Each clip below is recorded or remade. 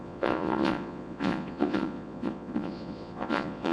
remade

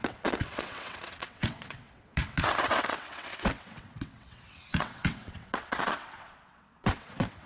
remade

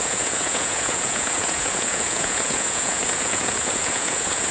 remade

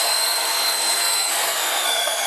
remade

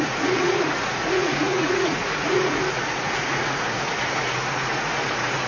remade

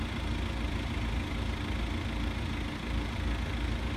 recorded